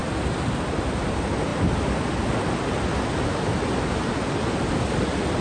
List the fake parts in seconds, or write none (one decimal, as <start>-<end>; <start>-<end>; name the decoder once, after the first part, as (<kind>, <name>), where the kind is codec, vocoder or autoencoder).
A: none